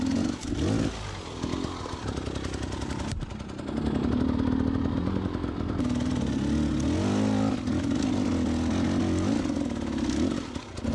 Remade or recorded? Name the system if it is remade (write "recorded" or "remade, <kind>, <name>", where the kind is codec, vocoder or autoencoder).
recorded